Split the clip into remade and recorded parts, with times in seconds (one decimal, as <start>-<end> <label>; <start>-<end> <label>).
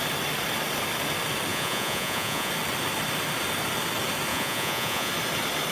0.0-1.5 recorded; 1.5-2.5 remade; 2.5-4.3 recorded; 4.3-5.1 remade; 5.1-5.7 recorded